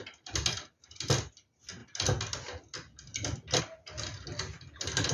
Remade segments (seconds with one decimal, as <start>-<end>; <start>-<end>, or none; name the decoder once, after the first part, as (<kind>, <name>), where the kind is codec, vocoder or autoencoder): none